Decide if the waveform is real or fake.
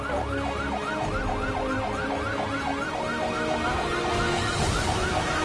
real